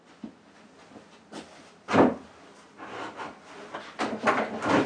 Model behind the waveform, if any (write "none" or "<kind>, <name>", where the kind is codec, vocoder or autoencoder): none